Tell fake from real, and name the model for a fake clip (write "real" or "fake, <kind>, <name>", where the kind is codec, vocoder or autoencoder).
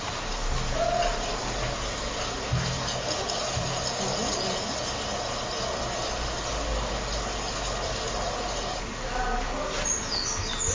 real